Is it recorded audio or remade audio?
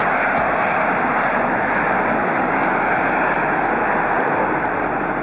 recorded